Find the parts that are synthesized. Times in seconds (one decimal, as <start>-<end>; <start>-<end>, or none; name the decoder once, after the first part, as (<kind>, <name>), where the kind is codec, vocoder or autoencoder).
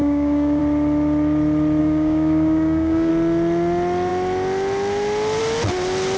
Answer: 0.0-0.6 (codec, DAC); 1.8-3.1